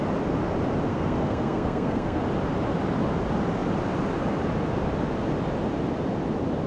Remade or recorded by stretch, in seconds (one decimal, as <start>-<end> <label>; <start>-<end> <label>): 0.0-0.9 recorded; 0.9-2.2 remade; 2.2-6.7 recorded